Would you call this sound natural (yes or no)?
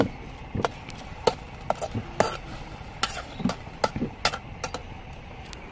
yes